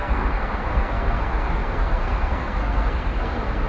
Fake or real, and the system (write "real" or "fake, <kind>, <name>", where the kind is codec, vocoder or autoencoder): fake, codec, SNAC